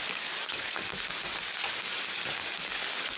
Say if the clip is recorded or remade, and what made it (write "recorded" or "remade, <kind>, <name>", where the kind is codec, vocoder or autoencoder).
remade, codec, DAC